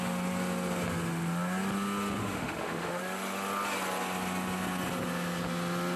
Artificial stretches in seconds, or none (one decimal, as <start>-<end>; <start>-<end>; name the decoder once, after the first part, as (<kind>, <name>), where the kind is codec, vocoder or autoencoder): 2.2-3.0 (autoencoder, DAC-VAE)